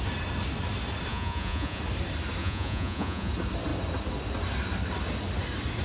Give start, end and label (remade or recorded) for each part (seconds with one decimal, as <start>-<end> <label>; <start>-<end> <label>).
0.0-1.1 recorded; 1.1-1.8 remade; 1.8-2.4 recorded; 2.4-3.3 remade; 3.3-5.8 recorded